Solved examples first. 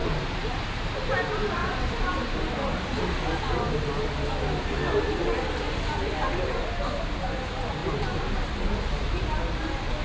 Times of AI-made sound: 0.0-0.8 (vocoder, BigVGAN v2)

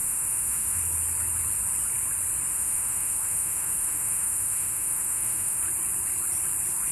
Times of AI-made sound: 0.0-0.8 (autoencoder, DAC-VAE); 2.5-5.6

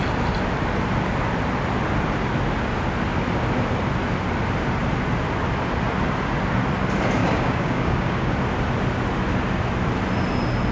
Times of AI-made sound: 7.2-8.3 (codec, DAC)

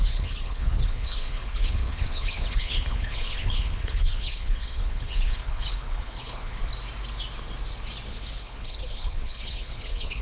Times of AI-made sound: 0.0-6.6 (codec, HILCodec); 8.1-10.2